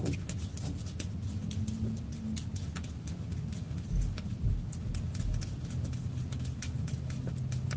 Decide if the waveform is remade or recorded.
recorded